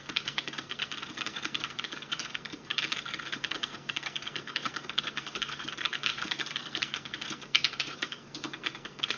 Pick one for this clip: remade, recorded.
remade